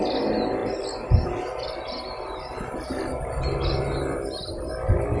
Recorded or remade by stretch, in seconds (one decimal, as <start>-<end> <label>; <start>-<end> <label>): 0.0-5.2 recorded